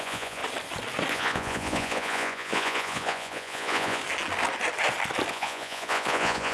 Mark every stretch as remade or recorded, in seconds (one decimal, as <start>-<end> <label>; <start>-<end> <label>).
0.0-0.4 remade; 0.4-1.1 recorded; 1.1-4.0 remade; 4.0-5.3 recorded; 5.3-6.5 remade

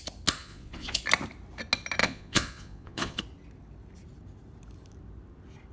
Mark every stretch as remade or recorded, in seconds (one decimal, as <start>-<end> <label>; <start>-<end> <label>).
0.0-0.4 recorded; 0.4-1.0 remade; 1.0-2.0 recorded; 2.0-3.2 remade; 3.2-5.7 recorded

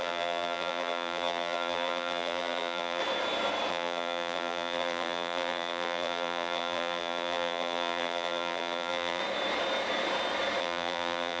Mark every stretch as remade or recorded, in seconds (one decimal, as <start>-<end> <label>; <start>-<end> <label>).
0.0-3.0 remade; 3.0-3.7 recorded; 3.7-9.2 remade; 9.2-10.6 recorded; 10.6-11.4 remade

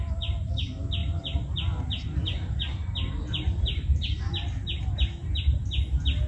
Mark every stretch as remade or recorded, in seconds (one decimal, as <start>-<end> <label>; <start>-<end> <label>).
0.0-6.3 recorded

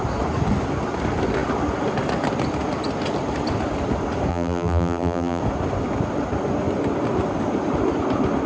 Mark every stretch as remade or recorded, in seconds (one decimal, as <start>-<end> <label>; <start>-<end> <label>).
0.0-4.3 recorded; 4.3-5.4 remade; 5.4-8.5 recorded

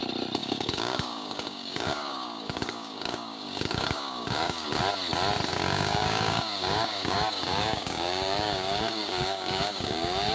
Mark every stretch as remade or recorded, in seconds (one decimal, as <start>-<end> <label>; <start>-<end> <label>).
0.0-0.4 recorded; 0.4-4.8 remade; 4.8-5.5 recorded; 5.5-10.3 remade

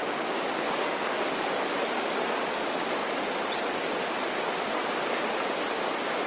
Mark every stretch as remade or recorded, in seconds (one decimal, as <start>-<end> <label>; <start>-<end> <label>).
0.0-1.5 remade; 1.5-6.3 recorded

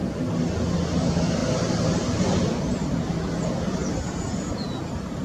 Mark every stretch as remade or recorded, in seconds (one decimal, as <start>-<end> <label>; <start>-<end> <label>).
0.0-5.2 recorded